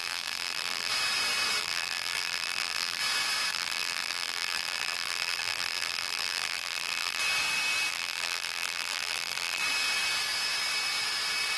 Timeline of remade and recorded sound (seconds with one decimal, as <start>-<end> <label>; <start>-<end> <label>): 0.0-0.9 remade; 0.9-1.6 recorded; 1.6-3.0 remade; 3.0-3.5 recorded; 3.5-7.2 remade; 7.2-7.9 recorded; 7.9-9.6 remade; 9.6-11.6 recorded